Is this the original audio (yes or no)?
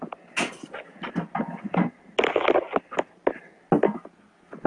yes